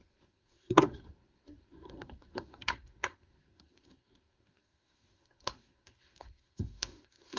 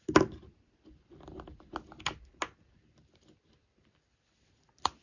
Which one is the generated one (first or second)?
first